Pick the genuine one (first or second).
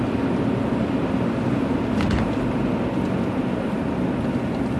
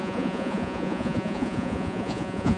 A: first